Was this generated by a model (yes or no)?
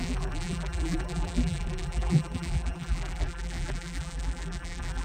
yes